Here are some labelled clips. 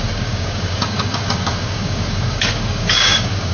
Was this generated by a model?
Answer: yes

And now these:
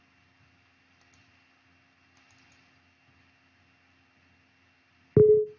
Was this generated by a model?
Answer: no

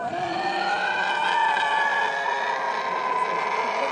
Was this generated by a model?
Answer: no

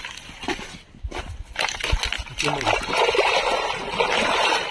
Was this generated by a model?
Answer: no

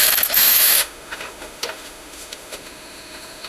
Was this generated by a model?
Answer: yes